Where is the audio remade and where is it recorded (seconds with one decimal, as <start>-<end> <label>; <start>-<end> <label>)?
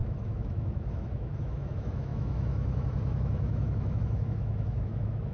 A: 0.0-5.3 remade